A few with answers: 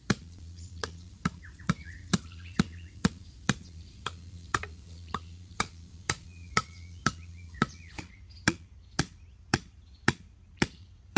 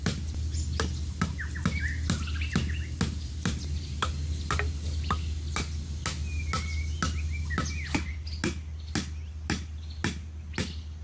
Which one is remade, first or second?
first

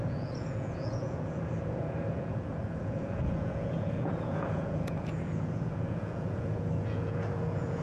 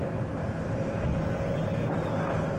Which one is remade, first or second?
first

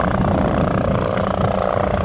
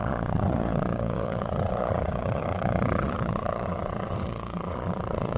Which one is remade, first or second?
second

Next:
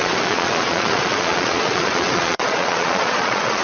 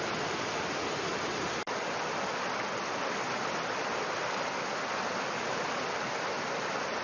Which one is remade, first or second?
first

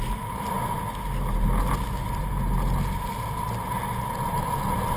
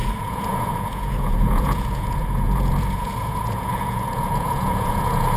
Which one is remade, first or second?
second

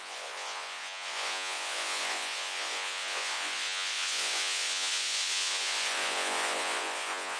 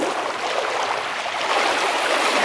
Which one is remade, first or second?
first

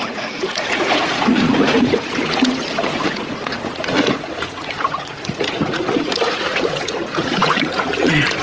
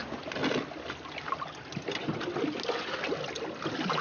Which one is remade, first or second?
first